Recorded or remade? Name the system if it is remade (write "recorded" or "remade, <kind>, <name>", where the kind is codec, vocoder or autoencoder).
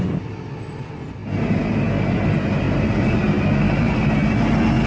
recorded